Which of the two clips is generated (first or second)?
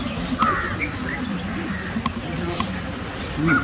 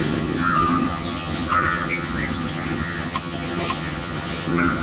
second